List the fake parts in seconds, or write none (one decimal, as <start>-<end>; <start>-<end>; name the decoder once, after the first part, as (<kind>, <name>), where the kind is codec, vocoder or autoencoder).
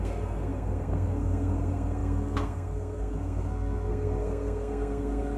0.0-5.4 (codec, SNAC)